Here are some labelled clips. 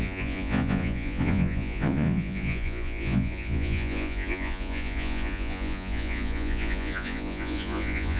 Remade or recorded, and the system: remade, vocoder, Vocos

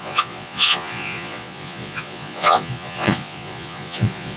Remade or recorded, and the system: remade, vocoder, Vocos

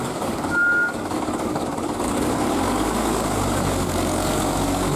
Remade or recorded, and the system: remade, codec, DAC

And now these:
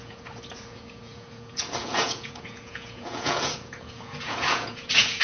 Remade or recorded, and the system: remade, vocoder, Vocos